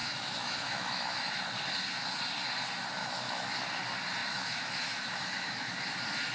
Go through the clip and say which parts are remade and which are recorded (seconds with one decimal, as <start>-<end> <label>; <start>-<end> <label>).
0.0-1.4 remade; 1.4-3.0 recorded; 3.0-3.5 remade; 3.5-4.2 recorded; 4.2-5.7 remade; 5.7-6.3 recorded